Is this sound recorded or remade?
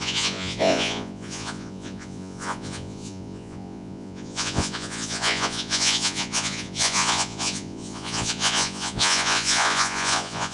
remade